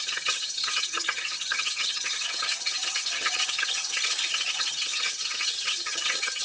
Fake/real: fake